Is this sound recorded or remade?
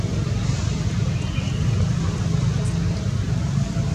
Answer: recorded